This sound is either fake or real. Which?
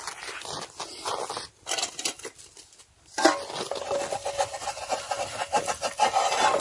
real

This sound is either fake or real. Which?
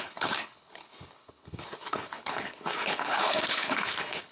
fake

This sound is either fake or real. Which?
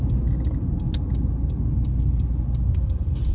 real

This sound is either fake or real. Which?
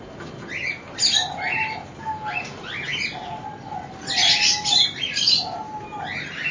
real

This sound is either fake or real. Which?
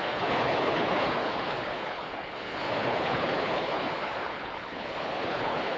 fake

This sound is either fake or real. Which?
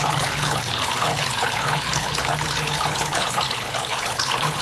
fake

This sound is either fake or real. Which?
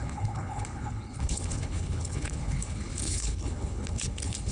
fake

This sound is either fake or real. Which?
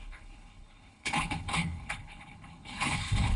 fake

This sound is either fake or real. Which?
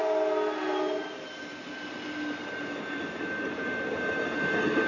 real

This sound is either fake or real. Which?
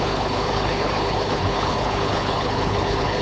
fake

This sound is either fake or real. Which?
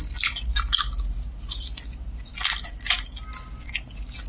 real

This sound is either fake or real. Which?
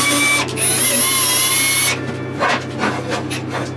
real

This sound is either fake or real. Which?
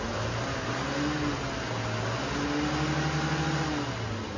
real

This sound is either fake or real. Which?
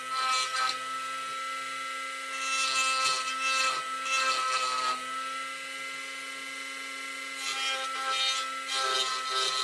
real